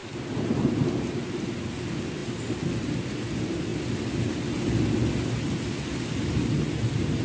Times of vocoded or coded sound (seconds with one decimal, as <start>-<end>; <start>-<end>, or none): none